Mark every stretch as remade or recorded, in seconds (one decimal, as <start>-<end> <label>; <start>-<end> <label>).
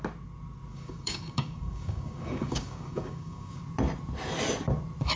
0.0-0.7 recorded; 0.7-3.6 remade; 3.6-5.2 recorded